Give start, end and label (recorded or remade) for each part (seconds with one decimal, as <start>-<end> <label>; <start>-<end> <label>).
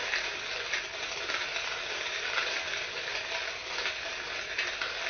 0.0-5.1 recorded